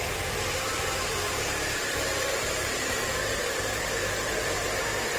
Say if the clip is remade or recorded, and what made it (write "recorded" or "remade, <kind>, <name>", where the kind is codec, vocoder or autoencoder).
remade, vocoder, BigVGAN v2